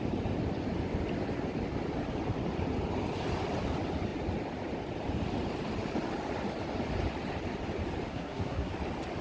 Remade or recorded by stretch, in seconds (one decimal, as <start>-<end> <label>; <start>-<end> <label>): 0.0-8.1 recorded; 8.1-8.7 remade; 8.7-9.2 recorded